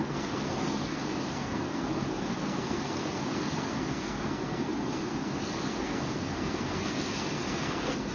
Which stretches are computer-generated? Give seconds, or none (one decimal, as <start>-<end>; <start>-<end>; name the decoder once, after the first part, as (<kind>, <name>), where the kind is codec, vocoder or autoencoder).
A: 0.0-8.1 (codec, SNAC)